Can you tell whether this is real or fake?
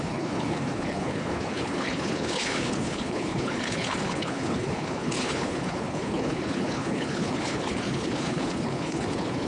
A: fake